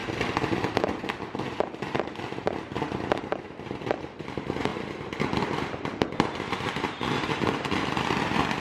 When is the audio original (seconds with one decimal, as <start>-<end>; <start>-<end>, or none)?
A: 0.0-2.0; 4.7-5.2